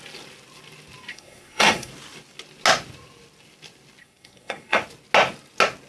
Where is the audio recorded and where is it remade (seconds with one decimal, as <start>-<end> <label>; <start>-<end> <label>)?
0.0-1.1 recorded; 1.1-1.9 remade; 1.9-4.0 recorded; 4.0-4.8 remade; 4.8-5.9 recorded